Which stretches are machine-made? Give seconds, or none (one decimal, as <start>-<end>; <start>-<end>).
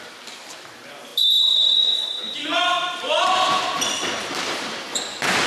0.0-5.5